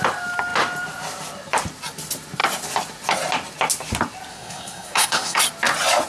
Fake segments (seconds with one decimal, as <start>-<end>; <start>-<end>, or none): 4.3-5.4